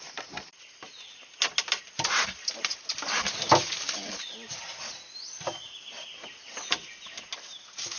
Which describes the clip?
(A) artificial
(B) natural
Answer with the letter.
B